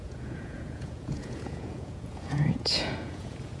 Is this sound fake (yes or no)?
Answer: yes